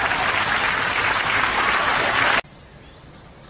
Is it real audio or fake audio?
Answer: fake